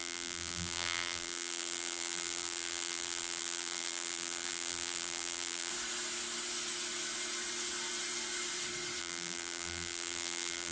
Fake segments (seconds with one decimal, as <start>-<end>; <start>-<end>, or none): 0.0-5.7; 9.0-10.7